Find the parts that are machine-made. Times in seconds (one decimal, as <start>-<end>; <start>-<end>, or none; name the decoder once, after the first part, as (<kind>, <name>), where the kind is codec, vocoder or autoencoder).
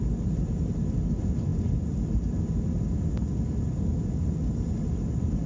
none